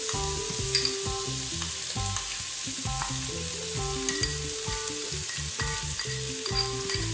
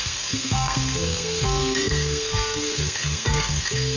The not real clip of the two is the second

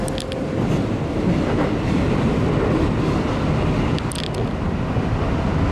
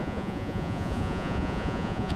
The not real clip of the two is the second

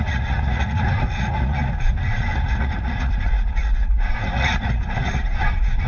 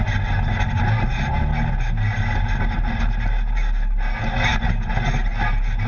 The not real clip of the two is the first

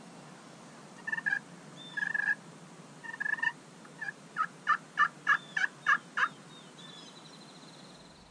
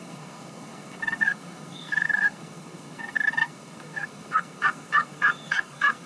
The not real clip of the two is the second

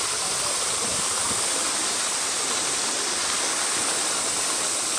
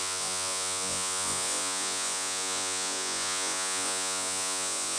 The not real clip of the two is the second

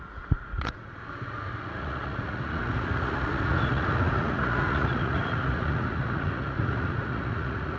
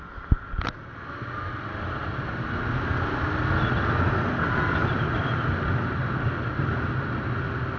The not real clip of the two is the first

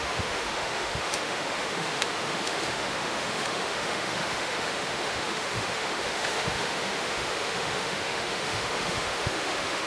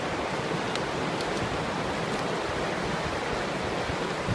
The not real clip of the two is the first